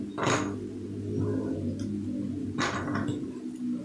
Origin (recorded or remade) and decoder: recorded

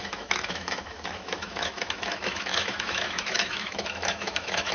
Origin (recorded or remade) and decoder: remade, autoencoder, DAC-VAE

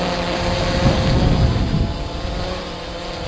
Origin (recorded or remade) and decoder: recorded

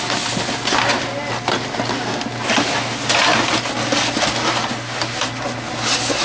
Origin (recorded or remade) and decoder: recorded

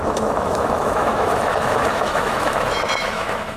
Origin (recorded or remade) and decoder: remade, autoencoder, DAC-VAE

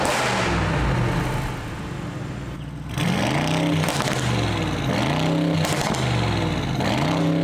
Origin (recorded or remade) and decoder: recorded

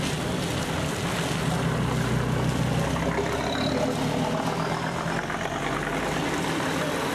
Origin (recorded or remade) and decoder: recorded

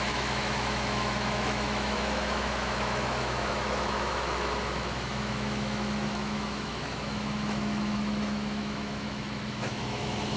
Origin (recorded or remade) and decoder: remade, autoencoder, DAC-VAE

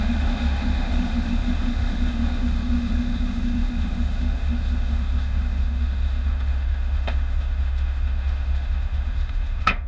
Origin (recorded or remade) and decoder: remade, autoencoder, DAC-VAE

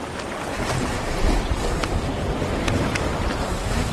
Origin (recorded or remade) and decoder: recorded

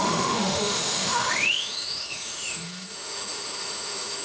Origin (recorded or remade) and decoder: remade, autoencoder, DAC-VAE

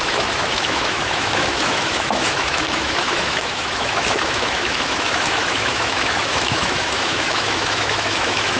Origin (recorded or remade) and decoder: remade, autoencoder, DAC-VAE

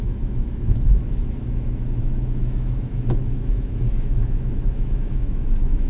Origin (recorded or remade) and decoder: remade, autoencoder, DAC-VAE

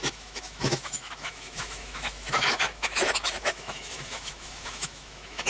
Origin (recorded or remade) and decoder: remade, autoencoder, DAC-VAE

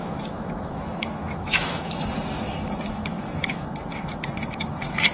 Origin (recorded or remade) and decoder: remade, autoencoder, DAC-VAE